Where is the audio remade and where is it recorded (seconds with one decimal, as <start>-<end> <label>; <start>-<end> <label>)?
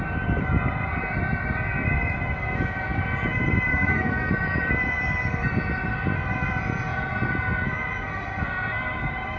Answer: 0.0-3.7 recorded; 3.7-4.3 remade; 4.3-9.4 recorded